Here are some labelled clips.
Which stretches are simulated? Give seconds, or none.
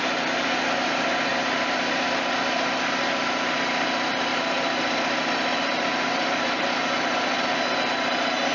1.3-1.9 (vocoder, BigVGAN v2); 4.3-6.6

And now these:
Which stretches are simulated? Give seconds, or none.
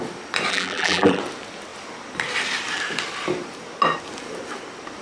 0.5-1.2 (vocoder, BigVGAN v2)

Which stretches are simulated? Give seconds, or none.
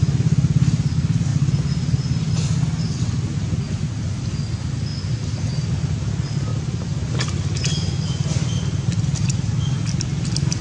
none